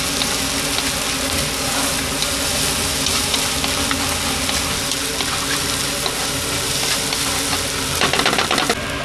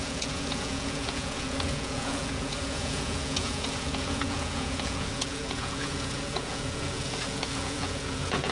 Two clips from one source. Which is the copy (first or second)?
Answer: second